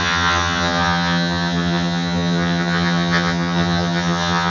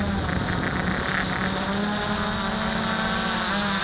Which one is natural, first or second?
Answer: second